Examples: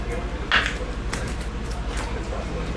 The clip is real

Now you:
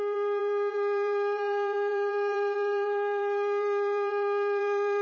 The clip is fake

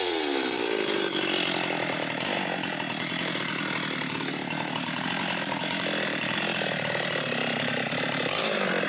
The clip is fake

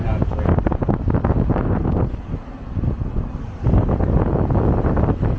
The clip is real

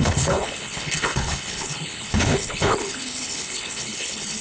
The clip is fake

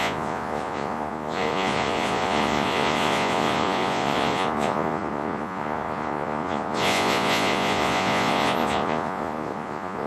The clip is fake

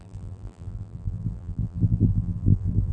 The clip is fake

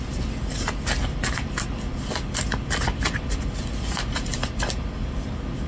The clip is real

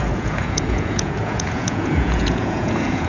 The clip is fake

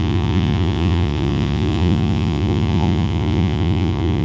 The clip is fake